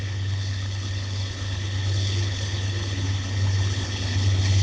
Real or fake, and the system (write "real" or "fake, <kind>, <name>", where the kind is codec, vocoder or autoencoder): fake, codec, HILCodec